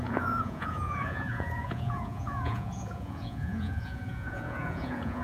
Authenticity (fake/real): fake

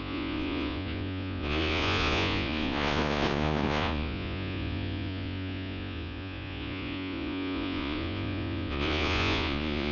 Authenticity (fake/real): fake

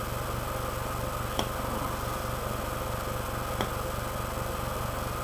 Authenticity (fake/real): real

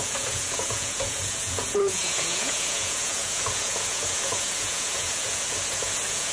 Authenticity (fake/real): fake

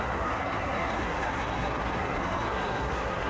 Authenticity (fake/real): fake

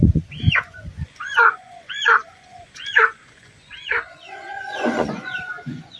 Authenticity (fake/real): fake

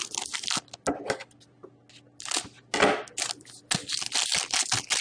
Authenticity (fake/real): real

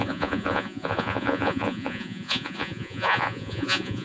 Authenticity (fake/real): fake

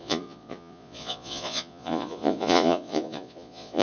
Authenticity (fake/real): fake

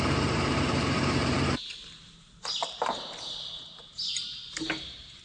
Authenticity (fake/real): fake